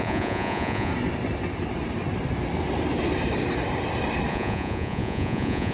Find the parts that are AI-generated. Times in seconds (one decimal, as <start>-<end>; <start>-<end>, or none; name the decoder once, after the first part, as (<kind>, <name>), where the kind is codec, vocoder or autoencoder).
0.0-0.9 (vocoder, Vocos); 4.3-5.7